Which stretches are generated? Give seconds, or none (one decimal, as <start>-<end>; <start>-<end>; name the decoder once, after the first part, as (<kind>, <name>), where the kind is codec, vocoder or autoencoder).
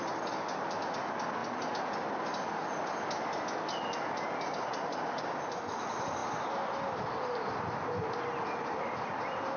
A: none